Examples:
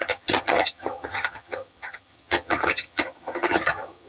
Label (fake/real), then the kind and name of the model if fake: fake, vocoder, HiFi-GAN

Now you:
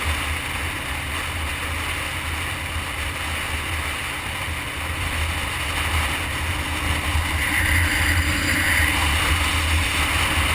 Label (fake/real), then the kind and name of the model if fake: real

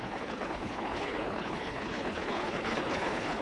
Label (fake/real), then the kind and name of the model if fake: fake, codec, HILCodec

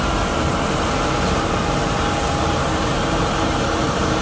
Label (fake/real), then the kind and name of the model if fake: fake, vocoder, BigVGAN v2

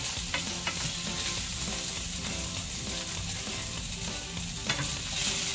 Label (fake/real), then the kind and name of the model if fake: real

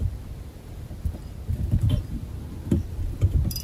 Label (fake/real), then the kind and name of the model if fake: real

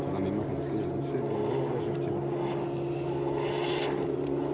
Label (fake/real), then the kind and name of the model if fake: real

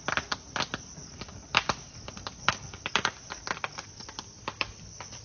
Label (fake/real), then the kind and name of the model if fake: fake, vocoder, BigVGAN v2